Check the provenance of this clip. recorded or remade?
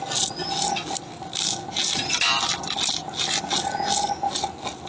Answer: recorded